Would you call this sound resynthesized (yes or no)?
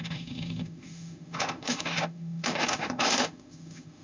yes